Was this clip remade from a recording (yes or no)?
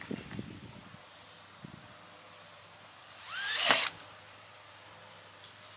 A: no